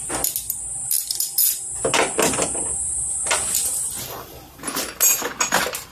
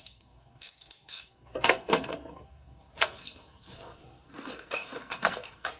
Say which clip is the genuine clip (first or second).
first